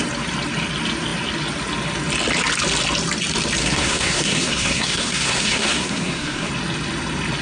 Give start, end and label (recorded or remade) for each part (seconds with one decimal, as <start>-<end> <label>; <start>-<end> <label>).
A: 0.0-3.6 recorded; 3.6-6.5 remade; 6.5-7.4 recorded